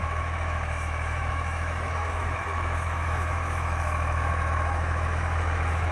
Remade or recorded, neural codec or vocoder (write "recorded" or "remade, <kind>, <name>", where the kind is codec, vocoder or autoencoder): remade, autoencoder, DAC-VAE